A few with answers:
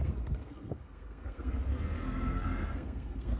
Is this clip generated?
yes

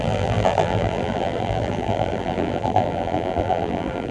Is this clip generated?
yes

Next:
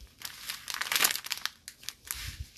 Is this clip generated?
no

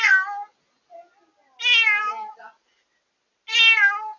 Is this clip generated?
no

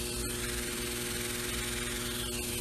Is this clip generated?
no